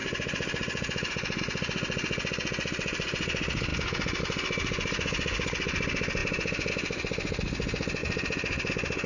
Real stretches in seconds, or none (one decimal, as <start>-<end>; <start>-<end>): 1.4-8.0; 8.7-9.1